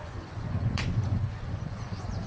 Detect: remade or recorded remade